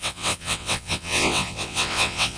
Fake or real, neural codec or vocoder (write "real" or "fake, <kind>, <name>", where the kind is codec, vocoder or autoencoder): fake, vocoder, WaveNeXt